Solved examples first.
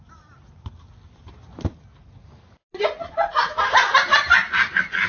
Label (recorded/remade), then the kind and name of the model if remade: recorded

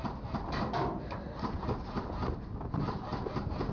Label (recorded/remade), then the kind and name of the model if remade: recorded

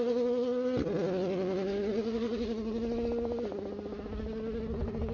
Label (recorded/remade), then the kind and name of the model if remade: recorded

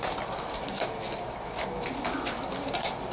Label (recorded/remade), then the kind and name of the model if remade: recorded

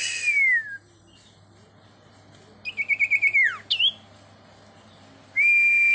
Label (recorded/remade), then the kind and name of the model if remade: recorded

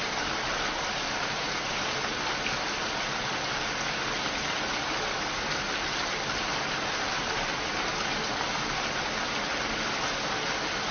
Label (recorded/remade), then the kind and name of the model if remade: recorded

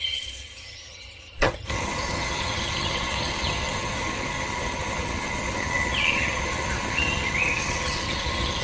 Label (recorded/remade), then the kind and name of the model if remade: remade, vocoder, HiFi-GAN